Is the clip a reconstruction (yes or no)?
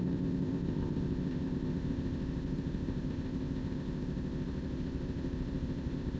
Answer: yes